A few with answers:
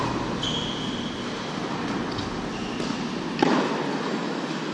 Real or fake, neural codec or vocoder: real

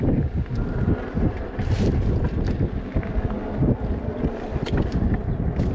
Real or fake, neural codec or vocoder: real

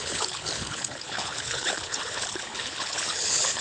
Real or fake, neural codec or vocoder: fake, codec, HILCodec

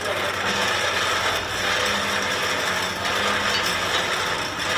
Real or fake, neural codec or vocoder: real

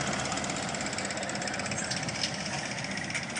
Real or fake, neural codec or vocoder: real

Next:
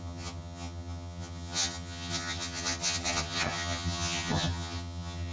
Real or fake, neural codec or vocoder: fake, vocoder, HiFi-GAN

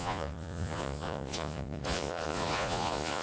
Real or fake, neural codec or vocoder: fake, vocoder, Vocos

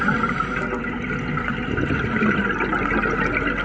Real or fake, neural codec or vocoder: real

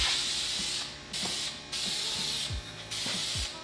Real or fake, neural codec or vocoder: real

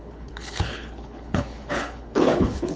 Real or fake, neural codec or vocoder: fake, codec, HILCodec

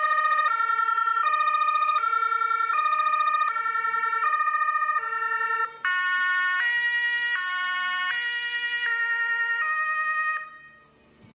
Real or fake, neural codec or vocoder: real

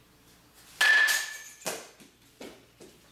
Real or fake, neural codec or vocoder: real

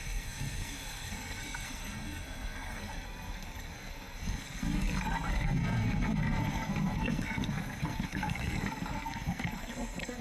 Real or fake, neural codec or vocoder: fake, codec, SNAC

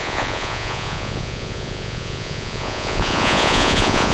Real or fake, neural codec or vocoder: fake, vocoder, Vocos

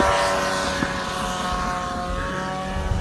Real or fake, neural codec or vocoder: real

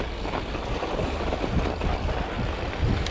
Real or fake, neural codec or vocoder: real